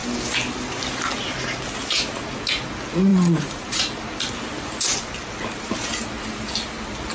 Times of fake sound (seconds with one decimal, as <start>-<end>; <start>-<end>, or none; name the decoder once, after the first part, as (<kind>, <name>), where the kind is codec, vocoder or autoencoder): 3.1-3.8 (vocoder, Vocos)